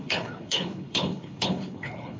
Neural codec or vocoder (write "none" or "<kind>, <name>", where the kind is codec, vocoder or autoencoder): codec, HILCodec